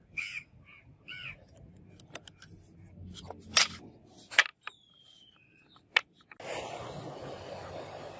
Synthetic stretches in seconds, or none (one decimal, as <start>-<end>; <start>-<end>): none